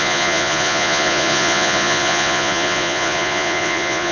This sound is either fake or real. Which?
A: fake